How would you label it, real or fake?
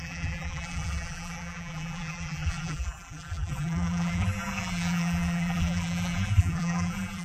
fake